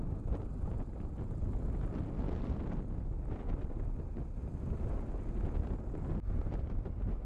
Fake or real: real